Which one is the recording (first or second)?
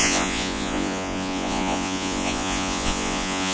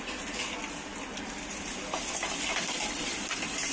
second